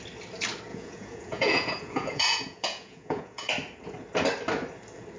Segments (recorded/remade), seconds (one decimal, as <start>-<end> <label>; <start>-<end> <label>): 0.0-0.7 recorded; 0.7-3.5 remade; 3.5-5.2 recorded